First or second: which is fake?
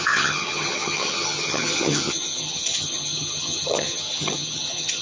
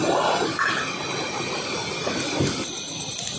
first